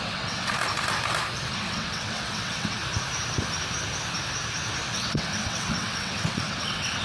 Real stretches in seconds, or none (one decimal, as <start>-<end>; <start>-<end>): 0.6-1.5; 2.8-4.9